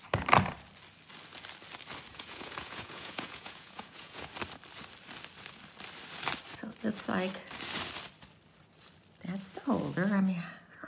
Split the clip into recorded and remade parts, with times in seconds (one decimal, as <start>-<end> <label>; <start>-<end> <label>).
0.0-2.1 recorded; 2.1-4.3 remade; 4.3-10.9 recorded